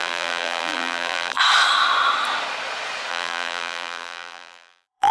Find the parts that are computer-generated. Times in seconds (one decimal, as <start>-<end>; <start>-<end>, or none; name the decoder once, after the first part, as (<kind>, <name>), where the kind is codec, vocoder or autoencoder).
0.0-1.4 (vocoder, BigVGAN v2); 3.1-5.1